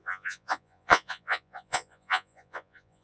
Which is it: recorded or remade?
remade